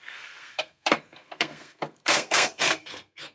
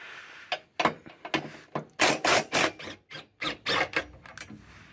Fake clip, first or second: first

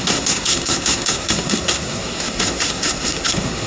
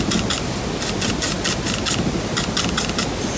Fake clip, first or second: first